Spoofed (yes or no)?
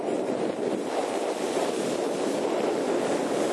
no